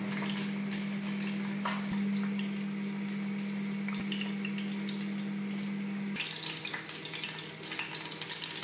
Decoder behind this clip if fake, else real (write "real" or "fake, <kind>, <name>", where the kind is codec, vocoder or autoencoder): real